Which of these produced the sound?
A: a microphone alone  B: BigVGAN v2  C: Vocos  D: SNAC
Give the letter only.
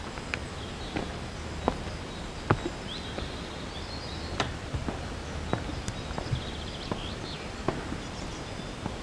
A